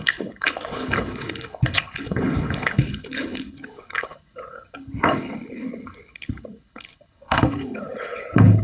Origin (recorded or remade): remade